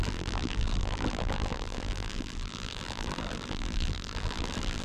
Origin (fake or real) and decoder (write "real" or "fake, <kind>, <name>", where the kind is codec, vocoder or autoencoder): fake, vocoder, BigVGAN v2